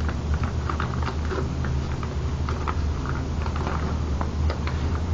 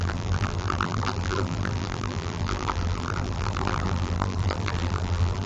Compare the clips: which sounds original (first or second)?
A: first